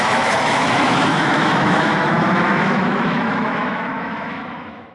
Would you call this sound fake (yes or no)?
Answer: yes